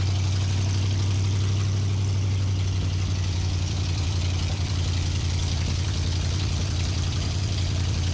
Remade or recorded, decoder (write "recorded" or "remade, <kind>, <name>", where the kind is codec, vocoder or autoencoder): remade, vocoder, BigVGAN v2